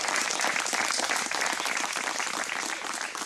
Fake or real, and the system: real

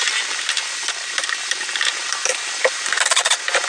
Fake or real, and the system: fake, vocoder, BigVGAN v2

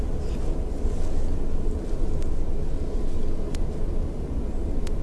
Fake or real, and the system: real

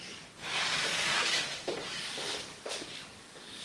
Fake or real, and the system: fake, codec, DAC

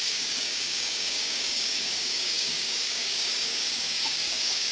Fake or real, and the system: fake, codec, DAC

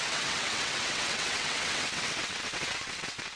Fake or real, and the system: fake, vocoder, WaveNeXt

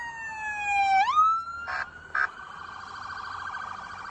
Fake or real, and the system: real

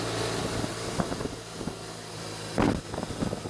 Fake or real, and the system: real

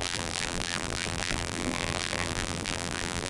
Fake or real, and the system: fake, vocoder, BigVGAN v2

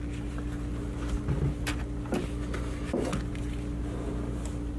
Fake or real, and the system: real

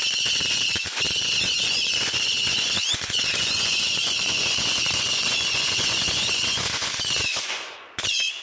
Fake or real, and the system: fake, vocoder, Vocos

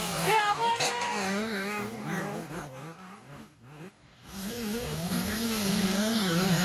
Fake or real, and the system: fake, codec, DAC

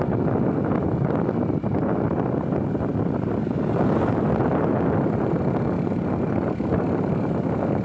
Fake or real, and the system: real